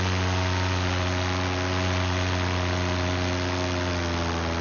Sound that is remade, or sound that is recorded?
recorded